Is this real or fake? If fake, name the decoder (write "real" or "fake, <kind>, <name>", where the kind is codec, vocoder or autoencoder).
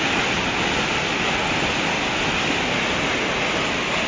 real